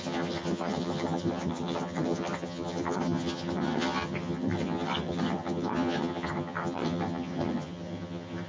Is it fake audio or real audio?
fake